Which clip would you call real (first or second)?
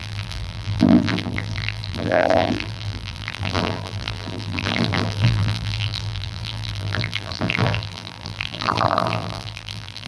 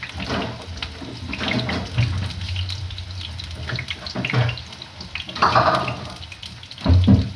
second